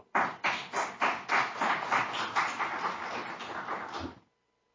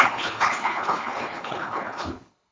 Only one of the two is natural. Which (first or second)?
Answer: first